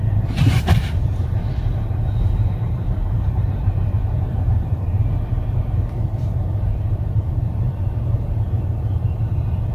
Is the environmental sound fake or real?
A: fake